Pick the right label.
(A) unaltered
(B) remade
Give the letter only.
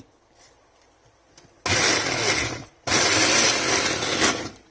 A